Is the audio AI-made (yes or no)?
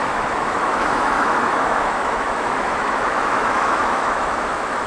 yes